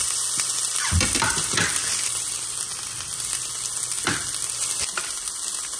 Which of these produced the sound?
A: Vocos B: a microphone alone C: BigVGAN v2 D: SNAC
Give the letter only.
B